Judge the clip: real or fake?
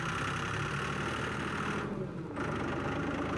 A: real